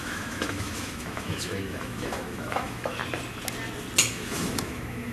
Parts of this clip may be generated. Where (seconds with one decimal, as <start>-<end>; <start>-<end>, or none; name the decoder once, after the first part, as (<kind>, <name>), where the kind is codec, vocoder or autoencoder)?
0.0-3.0 (autoencoder, DAC-VAE); 4.1-5.1